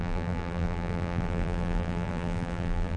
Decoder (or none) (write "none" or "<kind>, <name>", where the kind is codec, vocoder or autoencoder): vocoder, BigVGAN v2